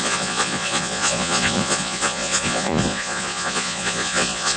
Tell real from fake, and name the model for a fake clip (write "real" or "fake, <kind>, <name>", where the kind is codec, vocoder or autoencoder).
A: fake, vocoder, Vocos